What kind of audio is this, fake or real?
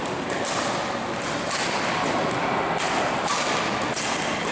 real